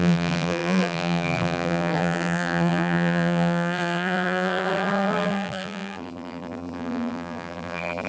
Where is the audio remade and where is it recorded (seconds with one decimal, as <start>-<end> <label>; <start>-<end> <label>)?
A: 0.0-8.1 remade